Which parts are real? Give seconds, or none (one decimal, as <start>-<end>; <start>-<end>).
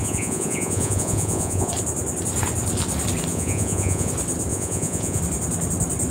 1.7-3.3; 4.1-4.5; 5.2-6.1